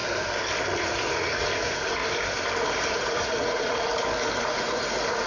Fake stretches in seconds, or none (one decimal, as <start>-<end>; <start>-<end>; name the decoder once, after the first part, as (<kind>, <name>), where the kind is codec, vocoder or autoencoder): 0.8-2.0 (vocoder, Vocos); 2.9-3.9; 4.4-5.3